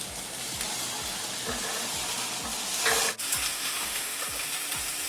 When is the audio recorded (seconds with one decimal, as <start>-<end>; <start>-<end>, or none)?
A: 0.0-3.5; 4.2-5.1